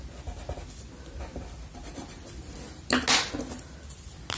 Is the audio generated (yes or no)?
no